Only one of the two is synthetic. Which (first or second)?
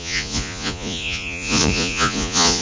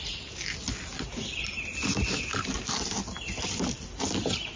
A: first